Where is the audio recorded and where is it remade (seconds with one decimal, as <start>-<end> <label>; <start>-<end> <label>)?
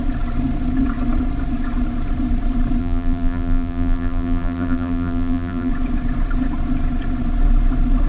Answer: 0.0-2.8 recorded; 2.8-5.7 remade; 5.7-8.1 recorded